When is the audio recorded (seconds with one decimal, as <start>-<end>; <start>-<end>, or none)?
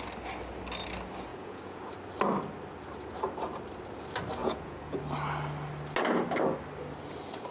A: 0.0-1.3; 1.9-4.4; 5.0-7.5